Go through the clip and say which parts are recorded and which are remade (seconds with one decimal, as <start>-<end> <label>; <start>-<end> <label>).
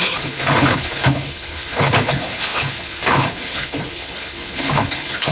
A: 0.0-5.3 remade